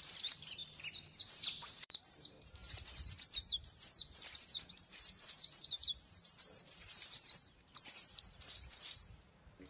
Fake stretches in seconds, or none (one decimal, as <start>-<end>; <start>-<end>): 0.0-0.6; 1.2-9.7